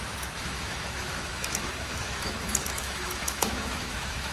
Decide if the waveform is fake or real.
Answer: fake